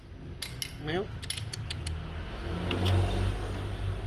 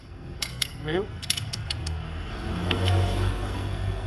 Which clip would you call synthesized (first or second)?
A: second